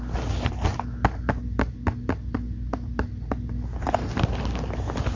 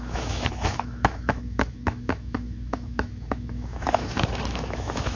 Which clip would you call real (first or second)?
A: first